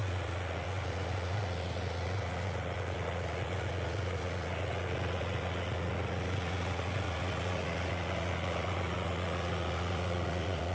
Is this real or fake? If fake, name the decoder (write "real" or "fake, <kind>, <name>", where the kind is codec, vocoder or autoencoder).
fake, vocoder, Vocos